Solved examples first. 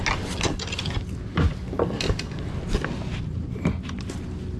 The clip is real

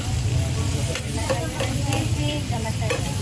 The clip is fake